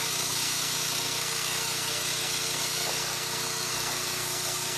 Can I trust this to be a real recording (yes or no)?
no